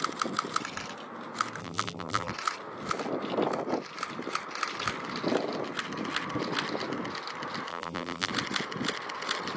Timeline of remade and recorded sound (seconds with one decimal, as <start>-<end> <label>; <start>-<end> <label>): 0.0-1.6 recorded; 1.6-2.3 remade; 2.3-7.7 recorded; 7.7-8.3 remade; 8.3-9.6 recorded